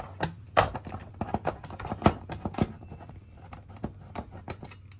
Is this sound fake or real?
fake